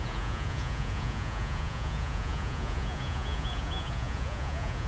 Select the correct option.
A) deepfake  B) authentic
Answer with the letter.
A